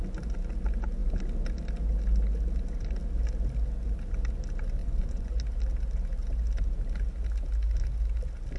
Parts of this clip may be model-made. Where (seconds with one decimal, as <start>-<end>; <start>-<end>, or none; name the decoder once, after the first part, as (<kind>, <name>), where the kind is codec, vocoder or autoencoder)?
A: 4.8-5.3 (vocoder, Vocos)